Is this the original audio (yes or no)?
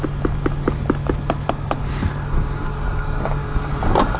yes